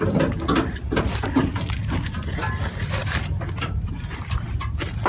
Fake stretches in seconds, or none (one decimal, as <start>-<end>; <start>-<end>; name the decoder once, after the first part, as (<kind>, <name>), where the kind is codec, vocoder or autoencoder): none

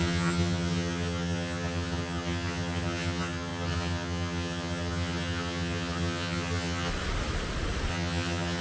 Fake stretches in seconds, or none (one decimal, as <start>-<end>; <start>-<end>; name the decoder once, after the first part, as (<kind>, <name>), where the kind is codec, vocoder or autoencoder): 0.0-6.9 (vocoder, HiFi-GAN); 7.9-8.6

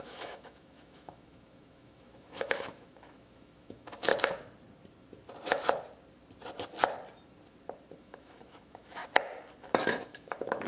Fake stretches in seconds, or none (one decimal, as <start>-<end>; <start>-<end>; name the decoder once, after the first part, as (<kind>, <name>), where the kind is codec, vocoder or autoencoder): 0.0-4.1 (autoencoder, DAC-VAE); 8.0-9.0; 9.6-10.7

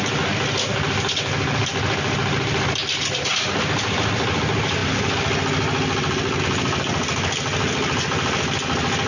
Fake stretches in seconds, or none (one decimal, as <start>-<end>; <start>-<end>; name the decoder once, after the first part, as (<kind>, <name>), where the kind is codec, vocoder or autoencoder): none

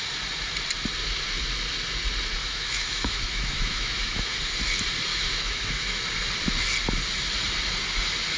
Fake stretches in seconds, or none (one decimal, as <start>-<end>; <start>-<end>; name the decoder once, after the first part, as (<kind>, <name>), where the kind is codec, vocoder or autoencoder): 2.4-4.4 (autoencoder, DAC-VAE); 5.1-6.0

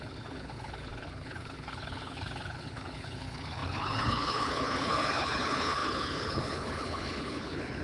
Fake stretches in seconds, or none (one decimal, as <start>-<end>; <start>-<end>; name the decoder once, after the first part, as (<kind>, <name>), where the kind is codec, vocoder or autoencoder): 0.0-7.8 (codec, HILCodec)